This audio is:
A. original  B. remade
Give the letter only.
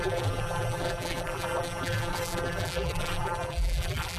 B